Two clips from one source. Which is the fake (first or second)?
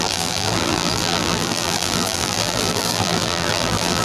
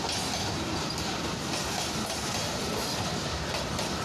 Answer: first